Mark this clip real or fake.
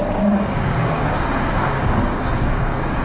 fake